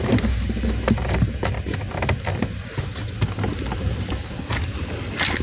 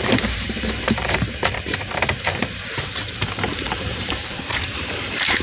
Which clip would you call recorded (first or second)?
first